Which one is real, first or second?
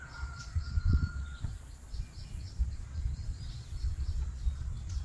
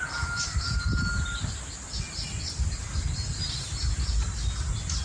second